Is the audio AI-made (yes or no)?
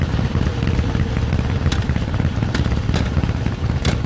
no